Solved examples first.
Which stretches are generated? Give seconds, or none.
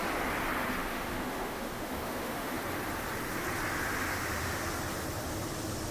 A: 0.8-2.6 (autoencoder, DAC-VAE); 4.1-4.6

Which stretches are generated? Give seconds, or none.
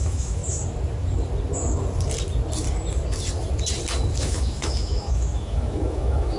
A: 0.0-0.4 (autoencoder, DAC-VAE); 4.2-6.4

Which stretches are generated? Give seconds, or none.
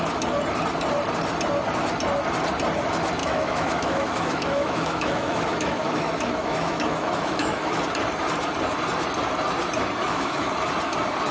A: 3.2-7.8 (autoencoder, DAC-VAE); 10.0-10.5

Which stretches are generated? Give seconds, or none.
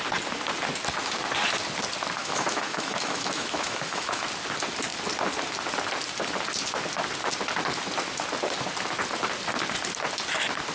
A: 2.2-4.2 (autoencoder, DAC-VAE)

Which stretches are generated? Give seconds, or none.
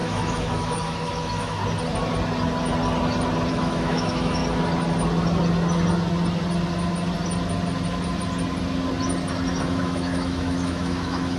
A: 0.0-1.6 (autoencoder, DAC-VAE); 3.5-4.4; 9.6-11.4